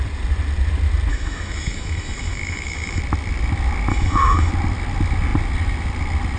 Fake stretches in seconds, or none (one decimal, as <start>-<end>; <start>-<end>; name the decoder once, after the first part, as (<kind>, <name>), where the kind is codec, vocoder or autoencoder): 1.1-3.0 (autoencoder, DAC-VAE); 3.9-4.5